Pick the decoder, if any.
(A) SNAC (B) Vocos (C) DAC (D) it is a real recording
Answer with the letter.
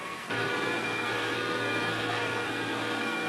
A